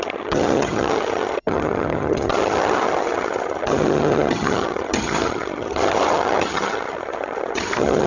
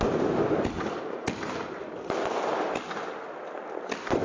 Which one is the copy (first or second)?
first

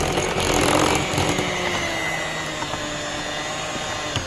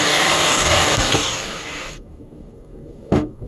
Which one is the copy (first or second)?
second